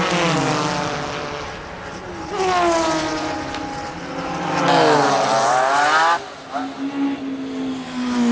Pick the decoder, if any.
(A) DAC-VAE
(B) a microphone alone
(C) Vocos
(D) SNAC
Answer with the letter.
B